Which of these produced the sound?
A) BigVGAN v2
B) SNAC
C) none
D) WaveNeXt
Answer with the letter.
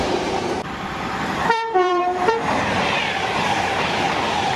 A